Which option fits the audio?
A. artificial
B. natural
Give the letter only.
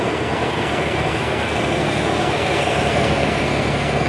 A